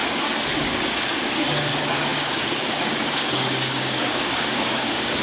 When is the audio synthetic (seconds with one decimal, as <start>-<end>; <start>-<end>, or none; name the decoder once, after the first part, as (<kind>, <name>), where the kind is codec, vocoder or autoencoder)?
0.6-5.2 (codec, DAC)